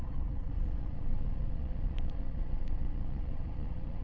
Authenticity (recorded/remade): remade